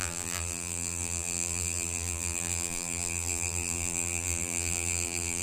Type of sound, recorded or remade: remade